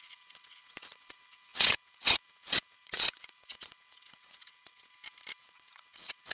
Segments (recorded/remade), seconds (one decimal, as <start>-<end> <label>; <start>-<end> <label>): 0.0-4.9 remade; 4.9-5.4 recorded; 5.4-6.3 remade